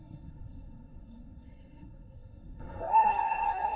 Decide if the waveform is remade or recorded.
remade